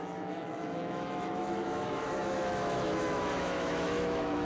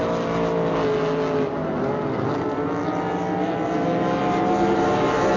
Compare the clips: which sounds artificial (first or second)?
first